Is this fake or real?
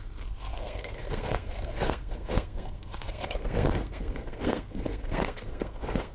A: fake